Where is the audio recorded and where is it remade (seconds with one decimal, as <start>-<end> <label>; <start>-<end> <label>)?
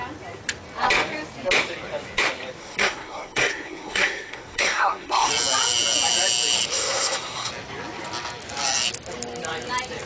0.0-2.6 recorded; 2.6-5.3 remade; 5.3-6.7 recorded; 6.7-7.5 remade; 7.5-10.1 recorded